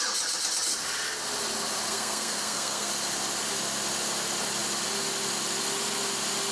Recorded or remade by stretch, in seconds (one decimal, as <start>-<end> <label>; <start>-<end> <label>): 0.0-1.9 recorded; 1.9-2.9 remade; 2.9-6.5 recorded

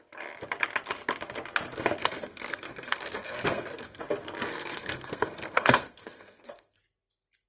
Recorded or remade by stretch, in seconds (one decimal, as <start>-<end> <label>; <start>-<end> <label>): 0.0-2.0 recorded; 2.0-4.0 remade; 4.0-4.5 recorded; 4.5-6.8 remade; 6.8-7.5 recorded

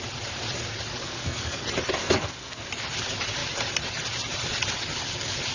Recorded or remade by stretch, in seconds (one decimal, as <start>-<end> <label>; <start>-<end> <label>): 0.0-1.0 recorded; 1.0-1.6 remade; 1.6-2.0 recorded; 2.0-2.7 remade; 2.7-5.5 recorded

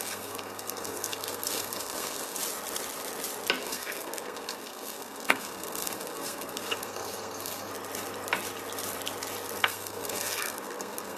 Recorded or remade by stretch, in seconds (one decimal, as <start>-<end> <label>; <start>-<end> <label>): 0.0-2.4 remade; 2.4-3.6 recorded; 3.6-7.7 remade; 7.7-9.6 recorded; 9.6-11.2 remade

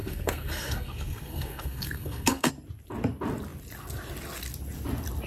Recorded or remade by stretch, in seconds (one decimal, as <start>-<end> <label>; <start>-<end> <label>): 0.0-2.5 remade; 2.5-5.3 recorded

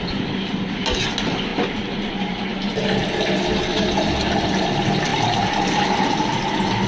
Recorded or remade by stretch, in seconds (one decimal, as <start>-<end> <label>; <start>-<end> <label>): 0.0-6.9 recorded

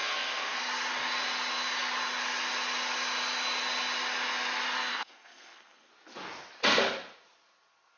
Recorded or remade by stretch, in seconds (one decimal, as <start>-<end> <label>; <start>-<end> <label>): 0.0-0.6 remade; 0.6-4.9 recorded; 4.9-5.9 remade; 5.9-8.0 recorded